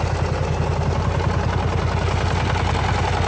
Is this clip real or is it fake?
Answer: real